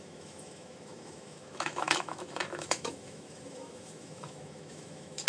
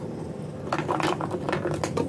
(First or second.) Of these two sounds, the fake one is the first